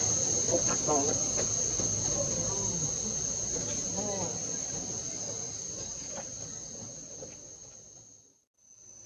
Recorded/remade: recorded